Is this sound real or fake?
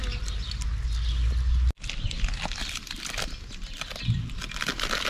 real